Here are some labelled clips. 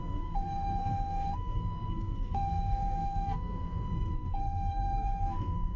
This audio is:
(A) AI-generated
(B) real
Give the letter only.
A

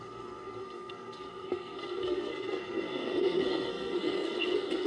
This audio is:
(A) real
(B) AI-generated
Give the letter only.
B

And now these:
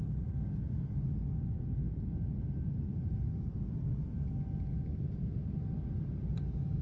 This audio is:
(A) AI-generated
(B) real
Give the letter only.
B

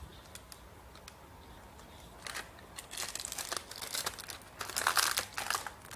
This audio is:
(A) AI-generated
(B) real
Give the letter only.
B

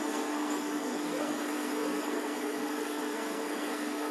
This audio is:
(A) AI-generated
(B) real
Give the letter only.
A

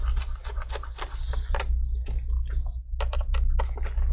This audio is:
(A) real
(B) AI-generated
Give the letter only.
A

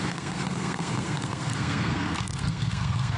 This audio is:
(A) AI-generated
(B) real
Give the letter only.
A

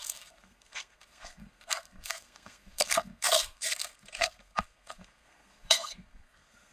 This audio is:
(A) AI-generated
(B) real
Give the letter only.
A